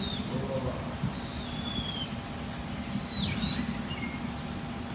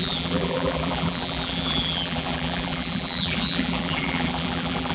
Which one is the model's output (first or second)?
second